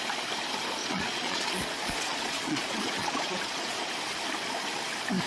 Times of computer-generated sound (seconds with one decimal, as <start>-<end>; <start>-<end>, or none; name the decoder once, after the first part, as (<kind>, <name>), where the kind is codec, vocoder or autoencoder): 0.8-3.9 (vocoder, Vocos)